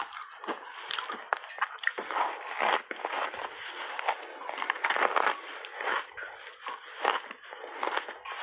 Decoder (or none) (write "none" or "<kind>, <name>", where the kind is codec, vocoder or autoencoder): none